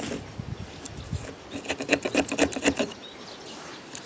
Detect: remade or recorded recorded